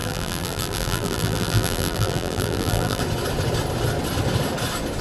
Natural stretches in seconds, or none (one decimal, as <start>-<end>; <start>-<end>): 3.0-5.0